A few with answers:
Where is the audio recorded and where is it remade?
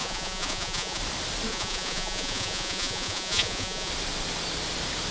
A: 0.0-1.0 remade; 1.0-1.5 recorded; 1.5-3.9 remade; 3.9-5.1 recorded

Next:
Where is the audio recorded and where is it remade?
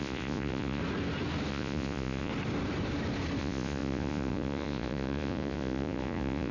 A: 0.0-0.8 remade; 0.8-1.5 recorded; 1.5-2.3 remade; 2.3-3.4 recorded; 3.4-6.5 remade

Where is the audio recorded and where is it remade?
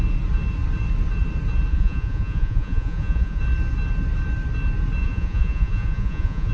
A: 0.0-1.7 recorded; 1.7-3.4 remade; 3.4-5.0 recorded; 5.0-6.5 remade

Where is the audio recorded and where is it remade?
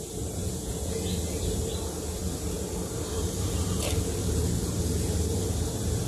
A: 0.0-0.4 recorded; 0.4-1.0 remade; 1.0-6.1 recorded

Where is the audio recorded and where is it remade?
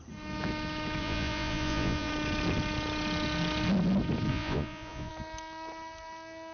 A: 0.0-1.0 recorded; 1.0-2.1 remade; 2.1-4.3 recorded; 4.3-5.1 remade; 5.1-6.5 recorded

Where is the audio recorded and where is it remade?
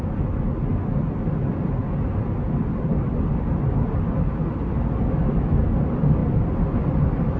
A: 0.0-7.4 recorded